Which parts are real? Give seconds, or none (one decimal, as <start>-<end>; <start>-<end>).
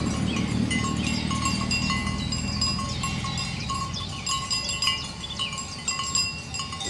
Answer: 0.0-3.6; 4.2-6.9